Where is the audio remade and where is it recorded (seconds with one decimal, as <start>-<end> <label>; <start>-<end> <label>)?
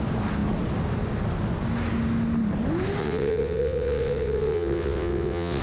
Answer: 0.0-3.0 recorded; 3.0-5.6 remade